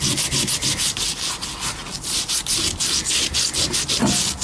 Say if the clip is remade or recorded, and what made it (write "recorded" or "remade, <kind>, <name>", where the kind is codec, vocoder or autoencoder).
recorded